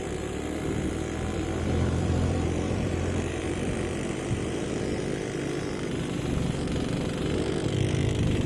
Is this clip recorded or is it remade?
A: remade